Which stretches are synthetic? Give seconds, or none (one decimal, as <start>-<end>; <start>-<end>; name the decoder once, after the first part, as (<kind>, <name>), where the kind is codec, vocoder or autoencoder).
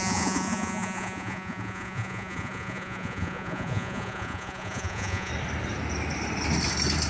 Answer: 0.0-5.3 (vocoder, Vocos)